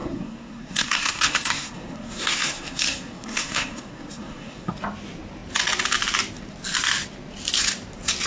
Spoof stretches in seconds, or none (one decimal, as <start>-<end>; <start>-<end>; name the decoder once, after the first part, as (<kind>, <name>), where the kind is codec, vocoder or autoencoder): 0.0-4.7 (codec, SNAC)